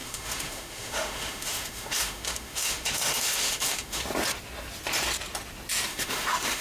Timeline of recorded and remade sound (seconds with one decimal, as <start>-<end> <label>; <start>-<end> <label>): 0.0-4.0 remade; 4.0-5.9 recorded; 5.9-6.6 remade